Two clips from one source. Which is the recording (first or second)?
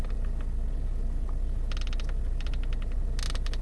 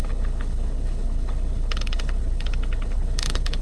first